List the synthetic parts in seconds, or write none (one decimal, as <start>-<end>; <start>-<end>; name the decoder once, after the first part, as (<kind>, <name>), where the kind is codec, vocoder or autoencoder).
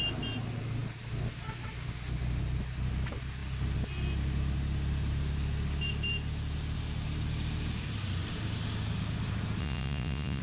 9.6-10.4 (vocoder, Vocos)